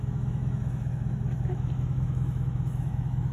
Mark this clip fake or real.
fake